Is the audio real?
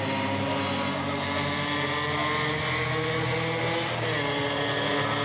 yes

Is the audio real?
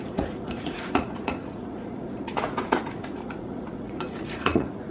no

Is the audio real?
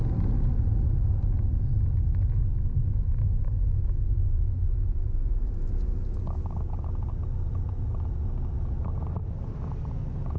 yes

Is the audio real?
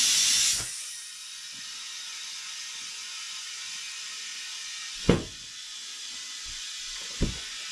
no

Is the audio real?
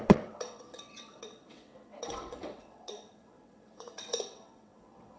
no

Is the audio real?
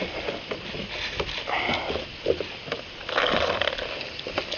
yes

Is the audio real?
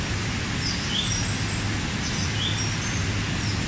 yes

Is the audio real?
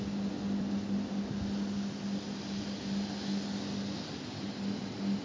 yes